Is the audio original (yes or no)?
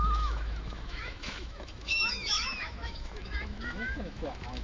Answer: no